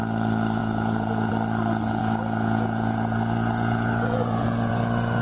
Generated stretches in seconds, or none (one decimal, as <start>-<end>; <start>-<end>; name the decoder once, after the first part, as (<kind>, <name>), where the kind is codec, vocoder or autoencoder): 0.6-1.3 (vocoder, Vocos); 2.0-4.7